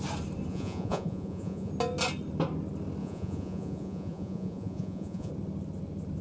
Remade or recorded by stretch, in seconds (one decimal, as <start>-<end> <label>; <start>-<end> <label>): 0.0-0.5 recorded; 0.5-1.7 remade; 1.7-3.0 recorded; 3.0-5.3 remade; 5.3-6.2 recorded